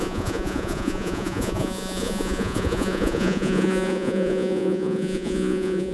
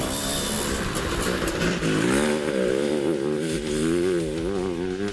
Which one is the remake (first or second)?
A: first